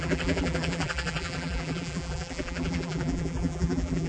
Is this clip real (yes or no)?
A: no